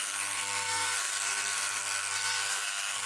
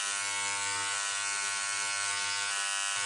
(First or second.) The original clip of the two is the second